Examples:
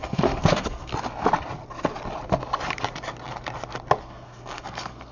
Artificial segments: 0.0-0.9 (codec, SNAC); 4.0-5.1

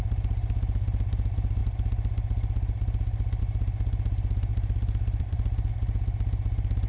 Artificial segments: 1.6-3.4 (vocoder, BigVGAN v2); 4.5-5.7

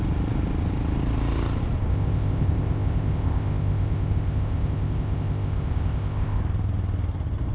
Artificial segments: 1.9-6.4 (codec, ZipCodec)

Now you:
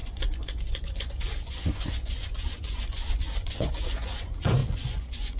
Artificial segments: 0.0-5.4 (vocoder, Vocos)

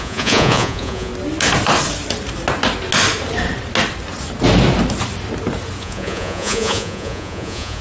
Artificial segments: 0.0-1.1 (vocoder, Vocos); 5.8-7.8